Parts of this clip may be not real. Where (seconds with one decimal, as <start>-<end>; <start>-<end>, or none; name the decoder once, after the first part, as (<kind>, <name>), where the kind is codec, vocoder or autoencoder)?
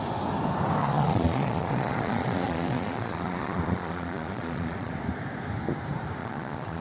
0.8-4.9 (vocoder, Vocos); 6.2-6.8